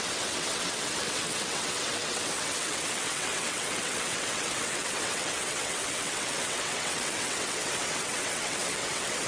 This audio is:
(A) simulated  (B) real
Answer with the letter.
A